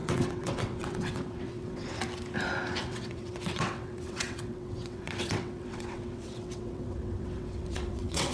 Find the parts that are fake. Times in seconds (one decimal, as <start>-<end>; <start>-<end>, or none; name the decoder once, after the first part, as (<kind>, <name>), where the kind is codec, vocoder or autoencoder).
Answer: 0.0-2.0 (vocoder, WaveNeXt); 2.8-8.3